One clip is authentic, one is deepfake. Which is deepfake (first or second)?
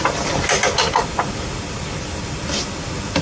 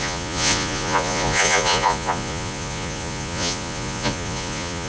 second